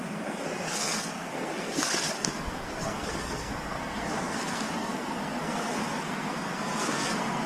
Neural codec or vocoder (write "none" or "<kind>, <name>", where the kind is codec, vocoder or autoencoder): codec, SNAC